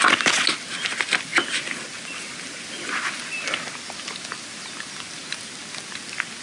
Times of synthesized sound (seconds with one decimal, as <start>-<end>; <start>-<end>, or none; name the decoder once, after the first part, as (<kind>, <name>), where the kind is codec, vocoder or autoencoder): none